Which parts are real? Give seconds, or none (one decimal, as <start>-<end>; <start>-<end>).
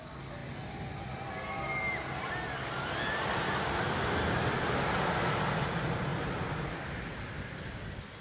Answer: 0.0-8.2